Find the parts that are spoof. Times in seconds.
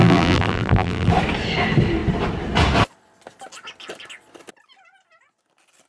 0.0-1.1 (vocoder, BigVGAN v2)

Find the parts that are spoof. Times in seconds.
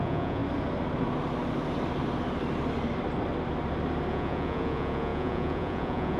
0.0-0.4 (vocoder, Vocos); 4.1-6.2